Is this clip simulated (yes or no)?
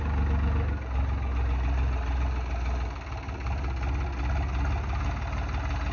no